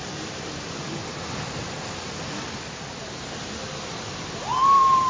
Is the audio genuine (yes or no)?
yes